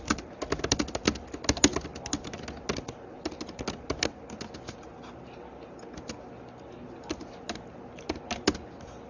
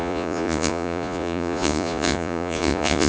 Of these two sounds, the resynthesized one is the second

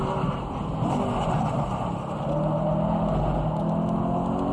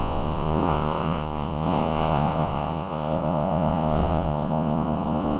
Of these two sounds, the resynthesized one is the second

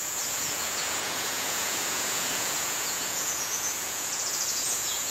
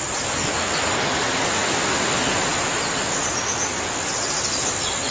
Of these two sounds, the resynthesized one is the first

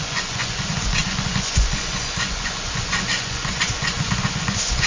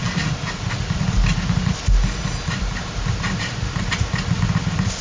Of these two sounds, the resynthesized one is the first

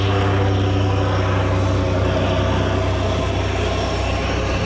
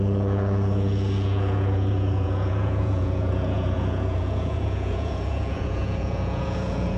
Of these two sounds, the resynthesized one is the second